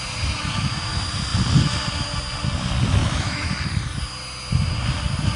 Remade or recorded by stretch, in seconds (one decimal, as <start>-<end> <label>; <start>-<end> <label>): 0.0-3.0 recorded; 3.0-3.5 remade; 3.5-5.4 recorded